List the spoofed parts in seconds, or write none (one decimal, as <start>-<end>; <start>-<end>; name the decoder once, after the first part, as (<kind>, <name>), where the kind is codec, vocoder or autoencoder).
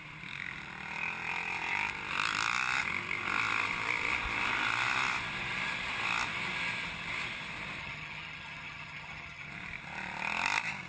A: 7.8-9.5 (vocoder, HiFi-GAN)